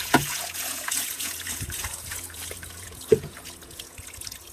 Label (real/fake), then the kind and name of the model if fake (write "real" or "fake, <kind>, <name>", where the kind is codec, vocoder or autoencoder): fake, vocoder, Vocos